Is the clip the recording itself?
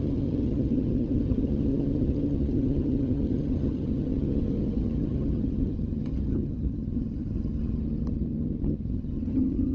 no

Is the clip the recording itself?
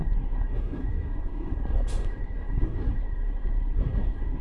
no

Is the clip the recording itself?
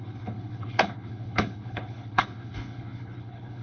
no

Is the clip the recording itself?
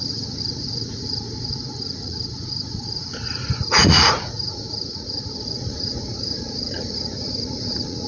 no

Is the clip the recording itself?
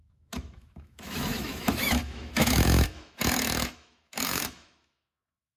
no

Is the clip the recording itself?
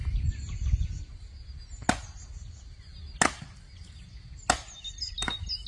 yes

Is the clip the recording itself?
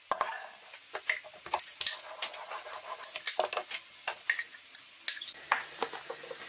yes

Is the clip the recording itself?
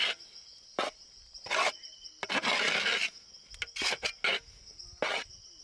yes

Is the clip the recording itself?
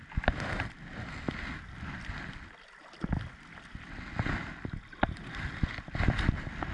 yes